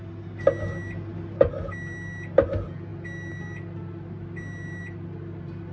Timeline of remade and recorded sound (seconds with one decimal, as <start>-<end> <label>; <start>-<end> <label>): 0.0-5.7 recorded